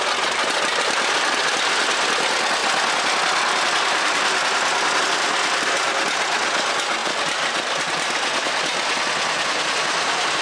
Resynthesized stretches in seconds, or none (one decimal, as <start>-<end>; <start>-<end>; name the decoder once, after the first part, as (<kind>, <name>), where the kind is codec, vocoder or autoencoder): none